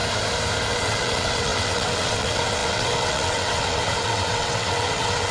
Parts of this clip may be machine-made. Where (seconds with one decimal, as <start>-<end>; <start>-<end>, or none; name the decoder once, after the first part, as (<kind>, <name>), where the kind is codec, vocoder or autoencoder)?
0.7-5.3 (vocoder, WaveNeXt)